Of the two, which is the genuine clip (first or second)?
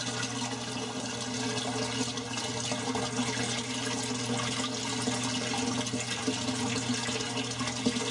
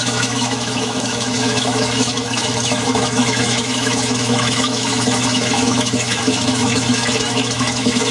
first